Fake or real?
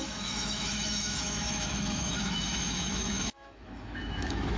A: fake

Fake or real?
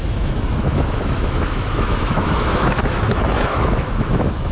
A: fake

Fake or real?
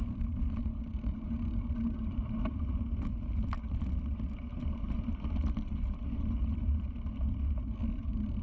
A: real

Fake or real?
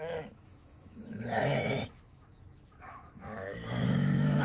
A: fake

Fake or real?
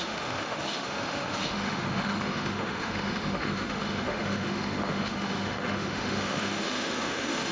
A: fake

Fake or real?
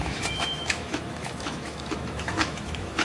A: fake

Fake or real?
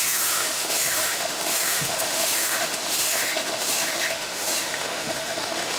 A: fake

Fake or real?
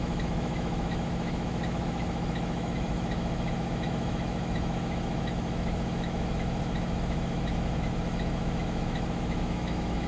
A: fake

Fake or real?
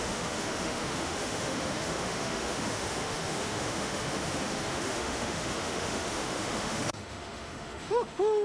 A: fake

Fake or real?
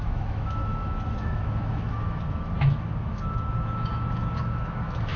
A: fake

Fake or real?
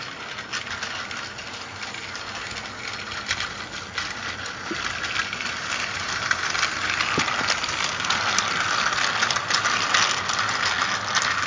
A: real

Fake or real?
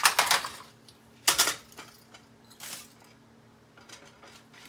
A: real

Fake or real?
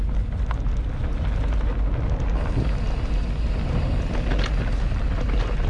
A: real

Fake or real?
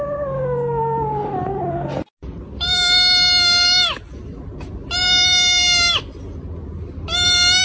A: real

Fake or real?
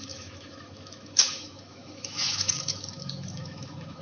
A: fake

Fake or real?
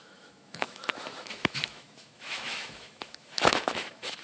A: fake